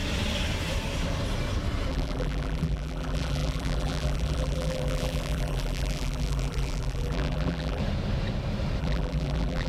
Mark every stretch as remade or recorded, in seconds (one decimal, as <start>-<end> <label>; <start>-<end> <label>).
0.0-1.9 recorded; 1.9-7.8 remade; 7.8-8.8 recorded; 8.8-9.7 remade